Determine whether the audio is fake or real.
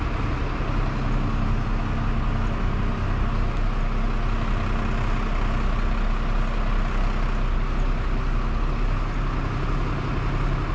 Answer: real